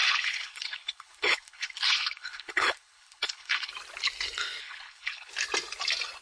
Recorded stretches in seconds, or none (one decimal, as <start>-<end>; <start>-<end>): 3.7-4.6; 5.3-6.2

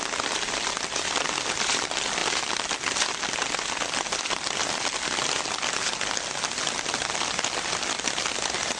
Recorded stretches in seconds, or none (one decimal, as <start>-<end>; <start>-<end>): 0.0-8.8

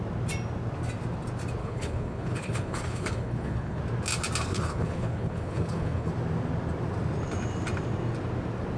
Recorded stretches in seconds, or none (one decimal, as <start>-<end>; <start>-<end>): 0.0-1.6; 3.8-4.5; 6.1-8.8

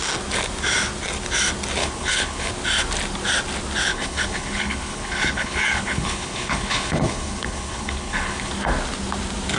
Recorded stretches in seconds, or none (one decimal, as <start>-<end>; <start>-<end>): 0.0-1.8; 2.5-3.9; 8.5-9.6

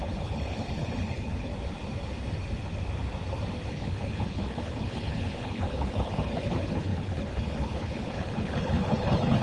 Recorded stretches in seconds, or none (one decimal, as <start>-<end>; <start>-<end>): 1.5-3.7